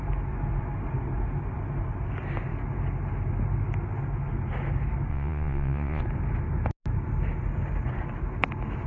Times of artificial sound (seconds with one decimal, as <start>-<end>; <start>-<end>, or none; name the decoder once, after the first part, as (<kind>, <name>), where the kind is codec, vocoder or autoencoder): 5.1-6.0 (vocoder, Vocos)